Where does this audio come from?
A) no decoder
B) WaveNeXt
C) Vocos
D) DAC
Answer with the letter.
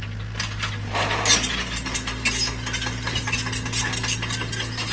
A